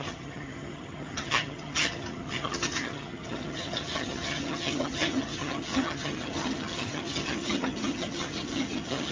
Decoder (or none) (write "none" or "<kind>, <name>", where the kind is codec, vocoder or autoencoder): vocoder, HiFi-GAN